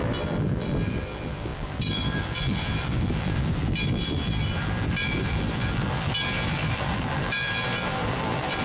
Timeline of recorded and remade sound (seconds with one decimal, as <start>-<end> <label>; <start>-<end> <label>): 0.0-8.6 remade